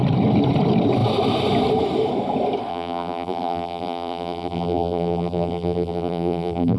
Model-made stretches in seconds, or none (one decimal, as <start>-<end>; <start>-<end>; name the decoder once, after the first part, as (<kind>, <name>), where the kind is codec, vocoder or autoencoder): 2.7-6.8 (vocoder, BigVGAN v2)